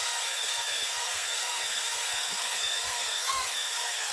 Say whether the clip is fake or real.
fake